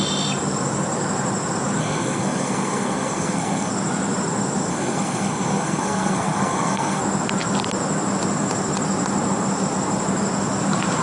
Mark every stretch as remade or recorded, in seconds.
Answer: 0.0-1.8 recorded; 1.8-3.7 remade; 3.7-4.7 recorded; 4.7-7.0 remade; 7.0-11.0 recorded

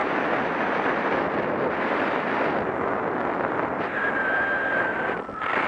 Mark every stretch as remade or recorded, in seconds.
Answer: 0.0-5.7 recorded

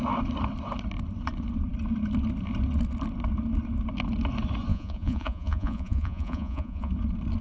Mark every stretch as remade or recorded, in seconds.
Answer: 0.0-4.7 recorded; 4.7-6.9 remade; 6.9-7.4 recorded